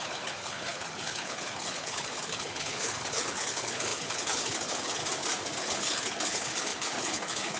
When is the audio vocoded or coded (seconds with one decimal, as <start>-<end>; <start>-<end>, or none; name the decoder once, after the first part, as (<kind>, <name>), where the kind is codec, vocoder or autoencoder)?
0.0-5.0 (codec, HILCodec); 5.6-7.6